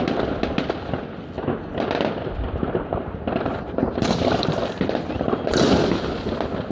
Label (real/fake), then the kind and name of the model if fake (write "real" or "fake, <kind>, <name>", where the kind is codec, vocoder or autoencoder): real